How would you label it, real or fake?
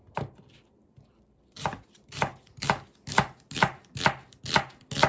real